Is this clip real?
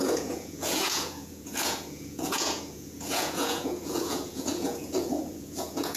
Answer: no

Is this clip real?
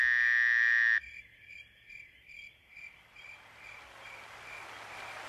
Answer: yes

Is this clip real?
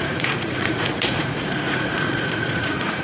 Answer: no